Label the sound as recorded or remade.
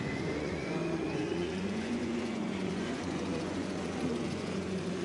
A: remade